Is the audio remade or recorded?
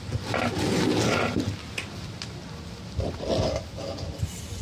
recorded